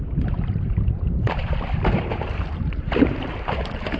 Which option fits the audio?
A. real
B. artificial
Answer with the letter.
B